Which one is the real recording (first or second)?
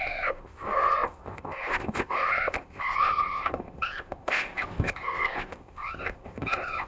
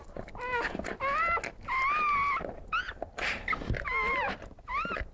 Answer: second